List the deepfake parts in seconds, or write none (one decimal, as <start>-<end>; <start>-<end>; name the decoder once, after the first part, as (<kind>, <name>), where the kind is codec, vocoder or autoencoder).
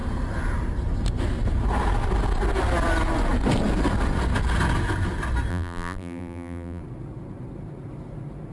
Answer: 5.5-6.8 (vocoder, BigVGAN v2)